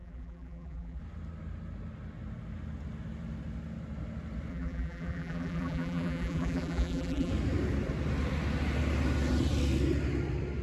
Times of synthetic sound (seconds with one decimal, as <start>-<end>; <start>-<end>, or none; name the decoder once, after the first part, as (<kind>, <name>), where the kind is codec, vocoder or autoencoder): 0.0-1.0 (vocoder, BigVGAN v2); 4.5-7.3